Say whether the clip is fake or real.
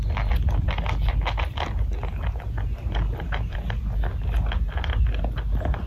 real